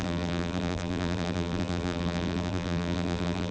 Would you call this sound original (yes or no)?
no